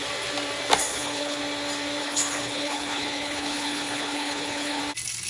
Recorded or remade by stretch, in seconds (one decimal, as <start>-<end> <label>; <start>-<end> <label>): 0.0-0.9 recorded; 0.9-1.4 remade; 1.4-2.0 recorded; 2.0-4.8 remade; 4.8-5.3 recorded